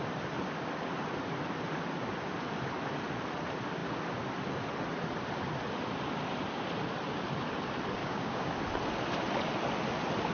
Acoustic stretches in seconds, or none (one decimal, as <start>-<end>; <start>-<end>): 0.0-8.0; 8.5-10.3